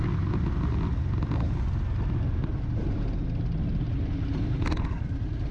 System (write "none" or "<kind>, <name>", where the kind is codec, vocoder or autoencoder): none